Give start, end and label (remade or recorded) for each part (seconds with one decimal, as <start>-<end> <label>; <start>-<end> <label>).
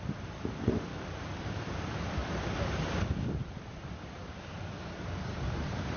0.0-6.0 remade